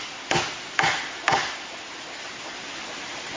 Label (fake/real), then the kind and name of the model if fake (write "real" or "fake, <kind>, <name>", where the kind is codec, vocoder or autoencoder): real